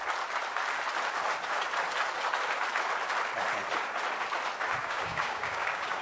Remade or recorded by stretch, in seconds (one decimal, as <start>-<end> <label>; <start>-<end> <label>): 0.0-4.8 recorded; 4.8-6.0 remade